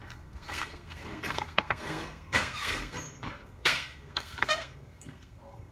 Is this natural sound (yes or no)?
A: no